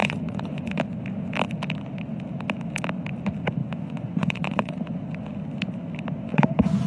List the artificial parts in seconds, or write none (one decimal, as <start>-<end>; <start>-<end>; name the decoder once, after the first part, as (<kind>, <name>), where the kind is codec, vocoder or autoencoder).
0.0-0.8 (vocoder, Vocos); 3.6-4.8; 6.3-6.9